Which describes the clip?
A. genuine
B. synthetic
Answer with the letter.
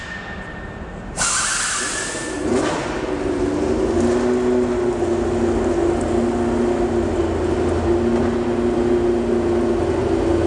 A